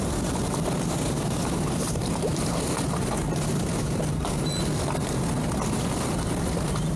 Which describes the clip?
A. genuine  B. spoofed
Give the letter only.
A